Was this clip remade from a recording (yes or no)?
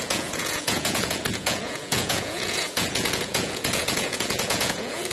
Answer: yes